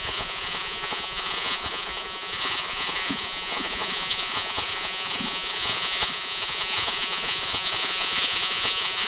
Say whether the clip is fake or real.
fake